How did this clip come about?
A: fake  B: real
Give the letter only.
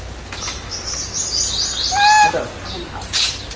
B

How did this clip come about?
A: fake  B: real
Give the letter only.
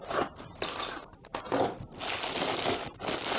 B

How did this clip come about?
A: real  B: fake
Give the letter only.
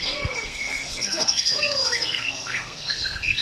B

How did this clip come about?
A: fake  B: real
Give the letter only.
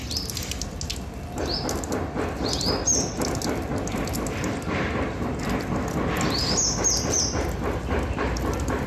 B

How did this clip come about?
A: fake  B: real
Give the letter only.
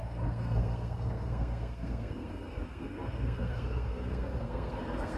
A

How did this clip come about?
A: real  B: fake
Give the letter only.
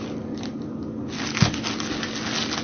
A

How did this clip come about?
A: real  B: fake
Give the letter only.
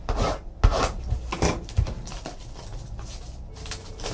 A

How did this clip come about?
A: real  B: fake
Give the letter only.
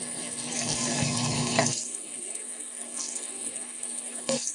B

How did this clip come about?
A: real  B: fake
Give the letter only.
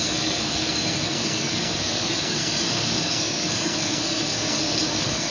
B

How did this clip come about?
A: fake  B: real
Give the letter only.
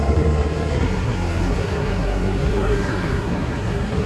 A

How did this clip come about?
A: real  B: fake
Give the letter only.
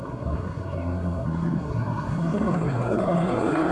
B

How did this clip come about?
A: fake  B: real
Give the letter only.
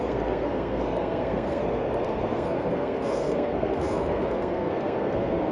A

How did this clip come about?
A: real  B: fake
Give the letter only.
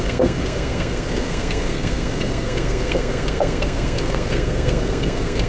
B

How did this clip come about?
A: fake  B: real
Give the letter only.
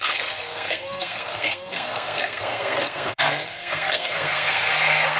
A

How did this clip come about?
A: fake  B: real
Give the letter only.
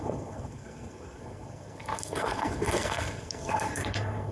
A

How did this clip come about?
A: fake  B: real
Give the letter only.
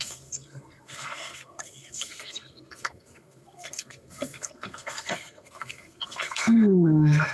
A